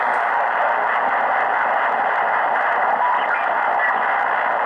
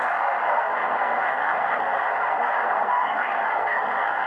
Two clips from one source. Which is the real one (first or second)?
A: first